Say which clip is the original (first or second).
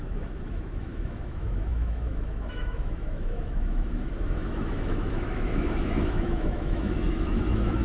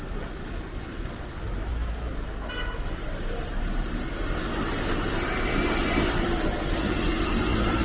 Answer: second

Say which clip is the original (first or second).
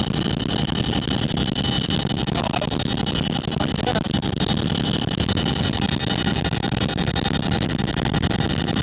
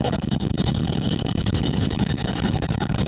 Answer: first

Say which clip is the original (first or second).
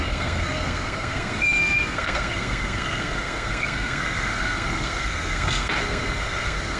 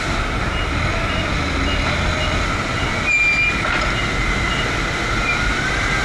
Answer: second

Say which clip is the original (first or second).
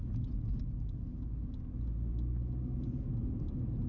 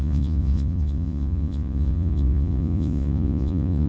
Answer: first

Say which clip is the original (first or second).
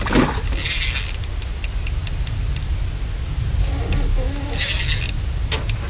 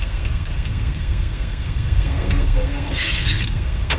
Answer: first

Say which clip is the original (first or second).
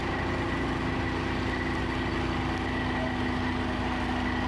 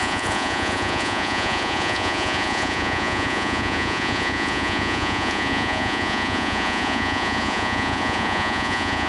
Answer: first